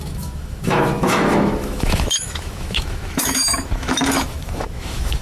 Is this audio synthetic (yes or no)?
yes